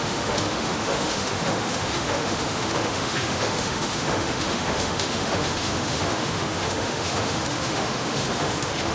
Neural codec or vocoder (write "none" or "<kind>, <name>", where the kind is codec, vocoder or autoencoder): autoencoder, DAC-VAE